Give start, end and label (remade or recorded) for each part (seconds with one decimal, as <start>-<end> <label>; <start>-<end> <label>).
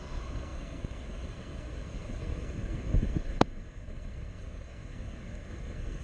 0.0-6.0 remade